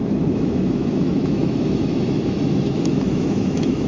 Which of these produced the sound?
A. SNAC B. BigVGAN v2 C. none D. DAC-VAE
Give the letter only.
D